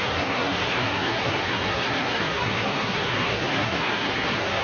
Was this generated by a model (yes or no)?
yes